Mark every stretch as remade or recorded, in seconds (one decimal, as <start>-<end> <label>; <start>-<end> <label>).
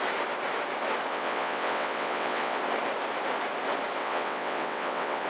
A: 0.0-1.1 recorded; 1.1-2.6 remade; 2.6-4.0 recorded; 4.0-5.3 remade